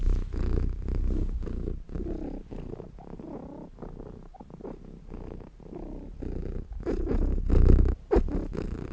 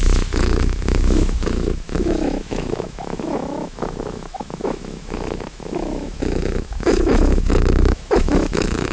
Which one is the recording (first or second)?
first